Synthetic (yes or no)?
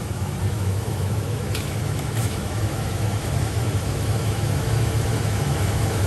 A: yes